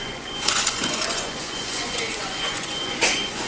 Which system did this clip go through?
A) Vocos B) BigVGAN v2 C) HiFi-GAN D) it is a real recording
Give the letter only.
A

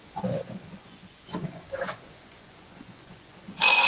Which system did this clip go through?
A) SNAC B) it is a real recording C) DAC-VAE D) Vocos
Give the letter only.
D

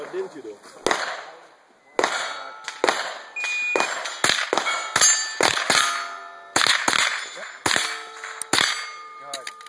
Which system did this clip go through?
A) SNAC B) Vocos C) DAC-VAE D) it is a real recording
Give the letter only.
D